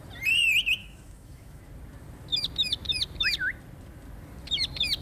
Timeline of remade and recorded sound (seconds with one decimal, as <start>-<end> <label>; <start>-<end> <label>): 0.0-0.8 recorded; 0.8-1.6 remade; 1.6-5.0 recorded